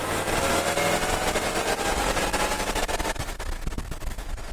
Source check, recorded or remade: recorded